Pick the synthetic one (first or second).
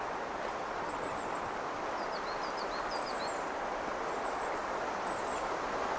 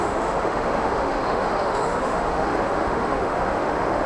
second